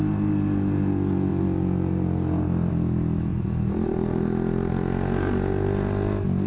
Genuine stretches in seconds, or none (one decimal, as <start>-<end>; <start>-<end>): 0.0-6.5